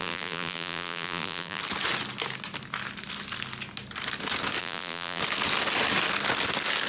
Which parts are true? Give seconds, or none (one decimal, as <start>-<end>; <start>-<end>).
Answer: 1.6-4.6; 5.2-6.9